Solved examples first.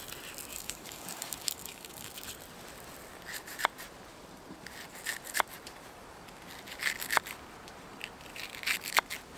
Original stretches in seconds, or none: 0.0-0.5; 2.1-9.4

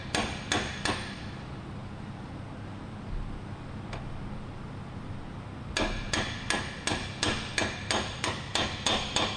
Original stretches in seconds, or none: 0.0-9.4

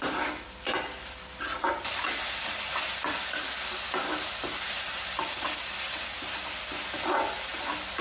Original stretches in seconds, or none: 0.0-7.5